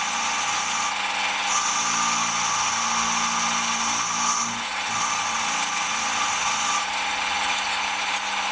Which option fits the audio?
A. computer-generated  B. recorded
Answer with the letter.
B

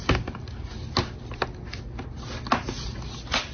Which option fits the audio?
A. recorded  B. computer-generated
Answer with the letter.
A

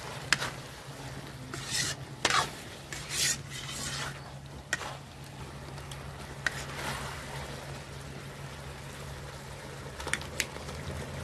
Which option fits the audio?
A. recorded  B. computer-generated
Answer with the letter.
A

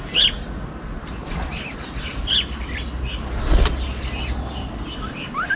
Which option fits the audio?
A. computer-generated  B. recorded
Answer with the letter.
B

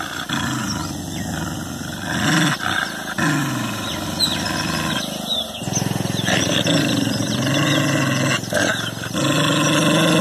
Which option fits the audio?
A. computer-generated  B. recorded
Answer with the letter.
B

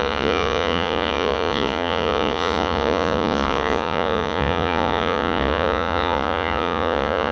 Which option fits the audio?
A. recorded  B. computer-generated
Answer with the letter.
B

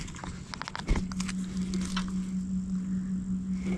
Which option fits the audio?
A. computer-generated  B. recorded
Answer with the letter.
B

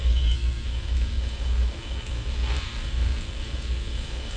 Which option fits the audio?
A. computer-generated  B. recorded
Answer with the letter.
A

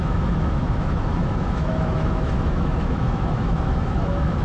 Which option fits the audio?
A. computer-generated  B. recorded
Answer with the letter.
A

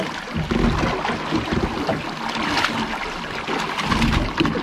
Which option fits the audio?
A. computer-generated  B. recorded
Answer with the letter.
B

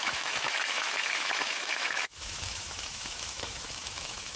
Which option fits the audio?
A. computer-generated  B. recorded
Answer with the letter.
A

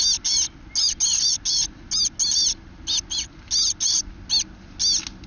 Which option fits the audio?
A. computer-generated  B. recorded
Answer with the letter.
B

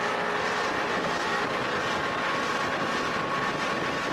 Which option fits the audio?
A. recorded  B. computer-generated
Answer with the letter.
A